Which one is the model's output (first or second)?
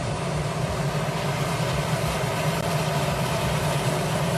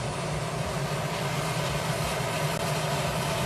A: first